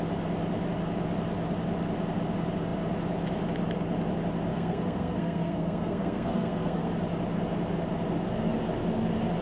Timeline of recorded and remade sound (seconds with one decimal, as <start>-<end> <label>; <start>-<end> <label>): 0.0-4.5 recorded; 4.5-6.9 remade; 6.9-9.4 recorded